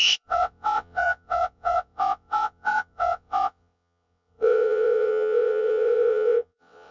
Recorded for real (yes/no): no